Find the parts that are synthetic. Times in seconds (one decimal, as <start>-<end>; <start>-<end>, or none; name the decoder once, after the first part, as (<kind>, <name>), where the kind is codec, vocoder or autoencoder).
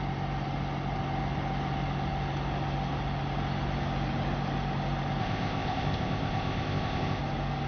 5.2-7.2 (codec, ZipCodec)